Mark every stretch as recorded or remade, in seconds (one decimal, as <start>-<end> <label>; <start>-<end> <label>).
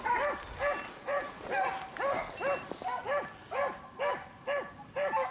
0.0-0.9 recorded; 0.9-1.5 remade; 1.5-5.3 recorded